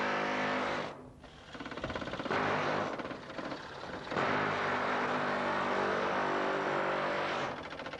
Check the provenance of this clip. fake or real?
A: real